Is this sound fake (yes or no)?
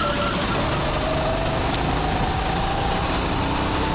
no